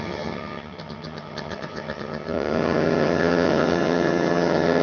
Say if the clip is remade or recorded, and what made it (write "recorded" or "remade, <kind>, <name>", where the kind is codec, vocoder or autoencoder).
remade, vocoder, HiFi-GAN